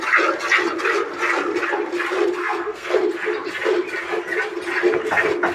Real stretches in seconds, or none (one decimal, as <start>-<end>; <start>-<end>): 0.0-2.4; 3.0-5.5